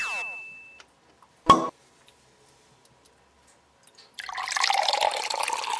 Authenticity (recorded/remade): recorded